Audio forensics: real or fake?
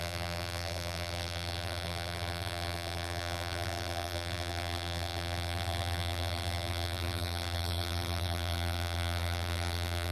fake